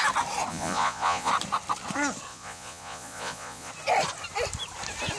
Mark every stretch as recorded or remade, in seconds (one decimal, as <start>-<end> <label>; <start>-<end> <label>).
0.0-0.5 recorded; 0.5-1.3 remade; 1.3-2.3 recorded; 2.3-3.7 remade; 3.7-5.2 recorded